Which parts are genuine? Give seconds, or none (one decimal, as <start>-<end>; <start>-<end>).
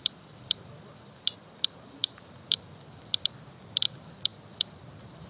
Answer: none